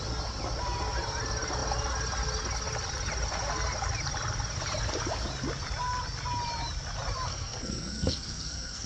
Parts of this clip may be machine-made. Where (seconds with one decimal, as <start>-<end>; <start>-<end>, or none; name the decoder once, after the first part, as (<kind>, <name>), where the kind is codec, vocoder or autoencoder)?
7.3-8.9 (codec, SNAC)